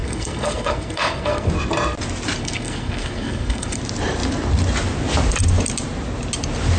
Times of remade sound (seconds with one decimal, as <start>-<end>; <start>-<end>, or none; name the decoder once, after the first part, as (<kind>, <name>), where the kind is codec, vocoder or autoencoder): 0.0-1.5 (codec, SNAC); 2.4-3.8